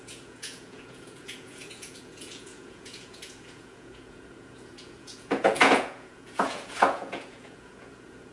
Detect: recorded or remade remade